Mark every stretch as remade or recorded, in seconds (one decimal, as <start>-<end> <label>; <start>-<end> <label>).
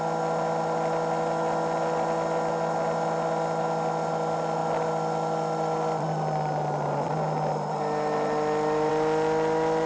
0.0-9.9 recorded